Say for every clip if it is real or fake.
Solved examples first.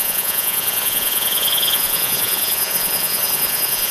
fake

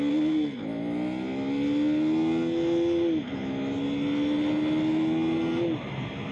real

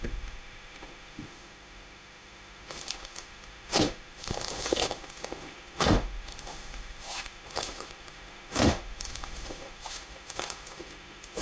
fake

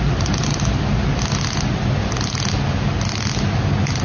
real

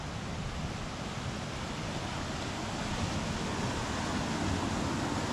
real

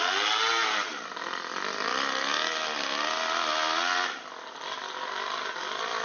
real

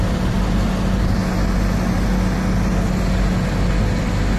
real